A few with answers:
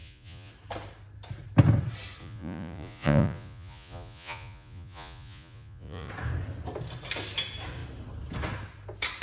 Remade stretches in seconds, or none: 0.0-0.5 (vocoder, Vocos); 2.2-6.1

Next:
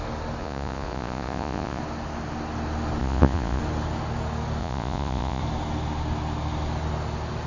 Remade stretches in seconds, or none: 0.4-1.8 (vocoder, Vocos); 3.0-3.6; 4.6-5.4